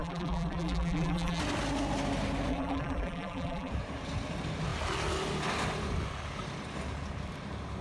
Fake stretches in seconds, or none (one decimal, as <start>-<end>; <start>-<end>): 0.0-1.4; 2.5-3.7